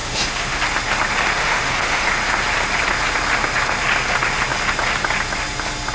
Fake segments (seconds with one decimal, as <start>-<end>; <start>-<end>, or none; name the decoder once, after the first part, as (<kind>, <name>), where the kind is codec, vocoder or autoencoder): 0.0-0.6 (autoencoder, DAC-VAE); 1.4-2.1